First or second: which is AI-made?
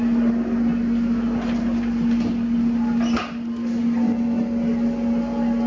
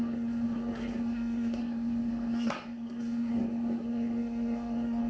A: second